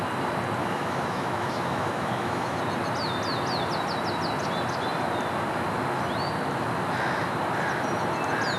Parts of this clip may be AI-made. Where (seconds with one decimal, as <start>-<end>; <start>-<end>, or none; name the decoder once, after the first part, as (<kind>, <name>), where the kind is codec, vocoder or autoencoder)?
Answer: 0.6-2.6 (autoencoder, DAC-VAE)